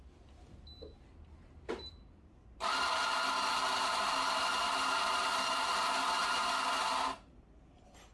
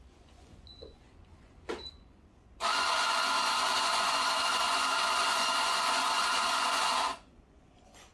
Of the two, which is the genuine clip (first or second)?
first